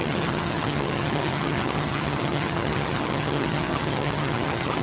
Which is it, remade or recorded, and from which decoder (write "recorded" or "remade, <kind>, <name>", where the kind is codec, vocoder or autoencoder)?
remade, vocoder, HiFi-GAN